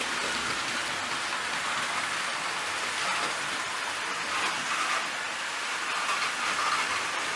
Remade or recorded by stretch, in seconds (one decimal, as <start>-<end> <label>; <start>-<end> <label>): 0.0-7.4 recorded